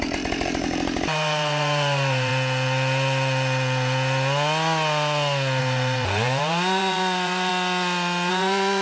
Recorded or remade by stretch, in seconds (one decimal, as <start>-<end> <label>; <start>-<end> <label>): 0.0-2.3 remade; 2.3-5.6 recorded; 5.6-7.5 remade; 7.5-8.3 recorded; 8.3-8.8 remade